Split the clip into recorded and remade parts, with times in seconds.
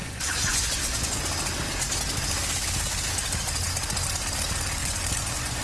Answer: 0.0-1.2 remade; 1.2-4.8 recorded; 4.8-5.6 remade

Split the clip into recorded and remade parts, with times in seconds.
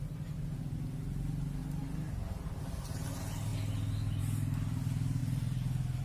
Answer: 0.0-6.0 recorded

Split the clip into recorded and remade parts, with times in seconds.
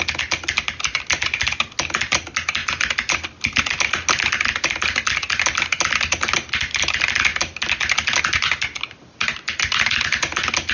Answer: 0.0-10.7 recorded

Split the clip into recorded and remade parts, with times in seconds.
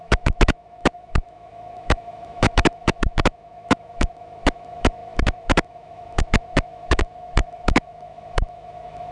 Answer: 0.0-9.1 remade